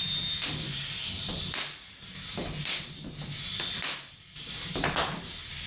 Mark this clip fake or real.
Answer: real